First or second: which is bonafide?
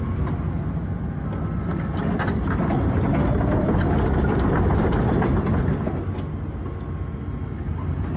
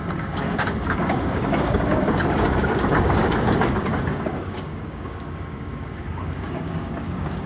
first